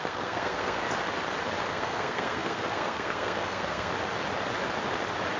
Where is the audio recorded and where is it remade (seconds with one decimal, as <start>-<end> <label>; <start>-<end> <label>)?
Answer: 0.0-0.8 remade; 0.8-1.7 recorded; 1.7-3.9 remade; 3.9-5.4 recorded